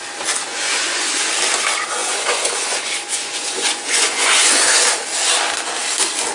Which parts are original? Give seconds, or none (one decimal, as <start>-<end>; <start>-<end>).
0.0-0.5; 1.1-2.0; 4.8-6.3